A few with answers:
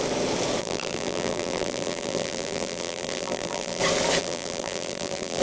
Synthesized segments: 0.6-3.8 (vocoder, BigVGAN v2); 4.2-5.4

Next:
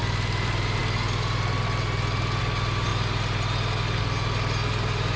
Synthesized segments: none

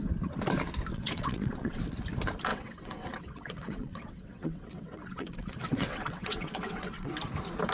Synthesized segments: 0.9-1.8 (vocoder, WaveNeXt); 2.5-7.1

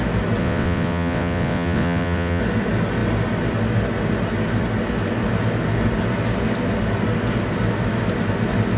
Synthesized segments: 0.4-2.4 (vocoder, WaveNeXt)

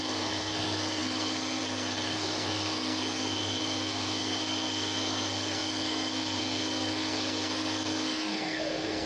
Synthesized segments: 0.0-9.1 (codec, SNAC)